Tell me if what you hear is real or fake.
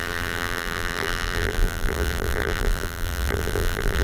fake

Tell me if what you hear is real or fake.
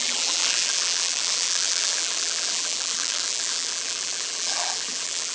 fake